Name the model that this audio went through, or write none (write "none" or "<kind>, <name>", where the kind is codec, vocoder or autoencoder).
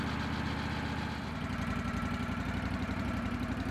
none